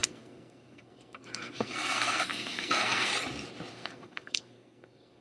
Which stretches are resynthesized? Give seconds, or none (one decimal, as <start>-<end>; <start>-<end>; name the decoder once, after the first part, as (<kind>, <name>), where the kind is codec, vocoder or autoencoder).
0.0-3.1 (codec, SNAC); 3.7-5.2